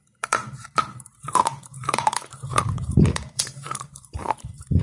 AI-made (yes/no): yes